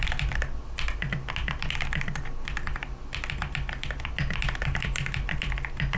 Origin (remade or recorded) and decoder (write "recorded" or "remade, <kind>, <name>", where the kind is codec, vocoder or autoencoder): recorded